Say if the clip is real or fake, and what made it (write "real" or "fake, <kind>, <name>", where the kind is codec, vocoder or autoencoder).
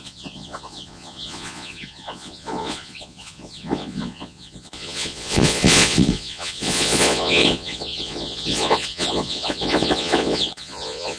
fake, vocoder, Vocos